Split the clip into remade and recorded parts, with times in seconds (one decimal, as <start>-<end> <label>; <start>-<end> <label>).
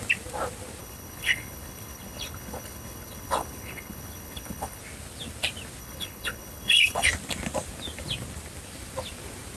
0.0-0.8 recorded; 0.8-4.8 remade; 4.8-5.8 recorded; 5.8-7.1 remade; 7.1-9.6 recorded